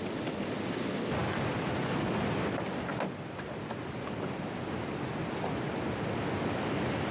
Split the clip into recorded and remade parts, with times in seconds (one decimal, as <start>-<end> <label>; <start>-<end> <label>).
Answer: 0.0-7.1 recorded